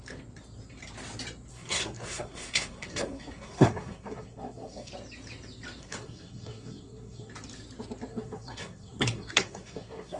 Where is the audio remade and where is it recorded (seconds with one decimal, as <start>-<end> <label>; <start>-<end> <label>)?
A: 0.0-1.5 recorded; 1.5-4.9 remade; 4.9-5.8 recorded; 5.8-7.3 remade; 7.3-8.1 recorded; 8.1-10.2 remade